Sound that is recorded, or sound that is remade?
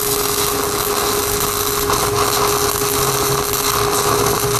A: recorded